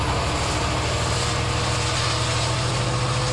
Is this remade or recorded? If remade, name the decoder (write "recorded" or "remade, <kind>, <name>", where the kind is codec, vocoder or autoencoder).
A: recorded